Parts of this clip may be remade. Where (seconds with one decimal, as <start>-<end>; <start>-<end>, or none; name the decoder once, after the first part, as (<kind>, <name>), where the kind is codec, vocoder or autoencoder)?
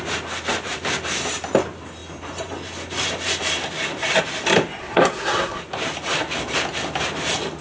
4.8-5.6 (codec, SNAC)